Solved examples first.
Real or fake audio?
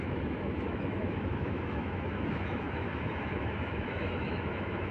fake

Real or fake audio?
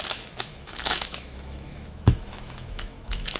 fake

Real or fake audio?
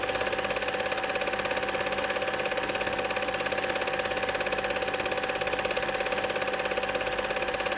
real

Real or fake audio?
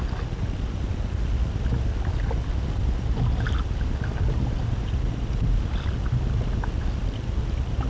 real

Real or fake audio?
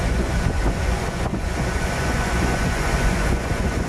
fake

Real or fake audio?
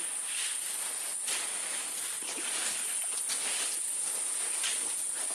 real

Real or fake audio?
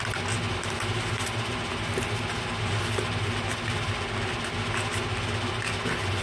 real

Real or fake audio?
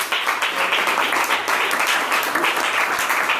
real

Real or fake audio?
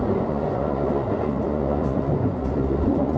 fake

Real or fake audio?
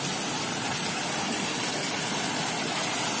real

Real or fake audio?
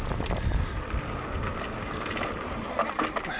real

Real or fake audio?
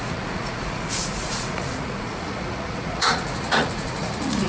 fake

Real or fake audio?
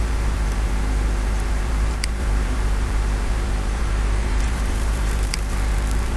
fake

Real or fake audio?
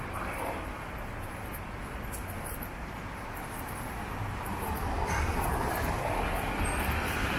real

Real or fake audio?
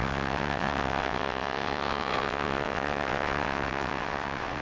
fake